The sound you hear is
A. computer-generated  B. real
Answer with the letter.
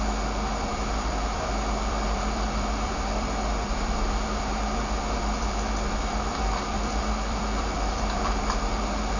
A